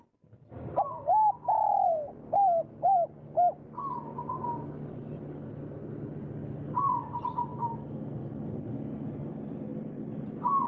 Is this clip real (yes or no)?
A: yes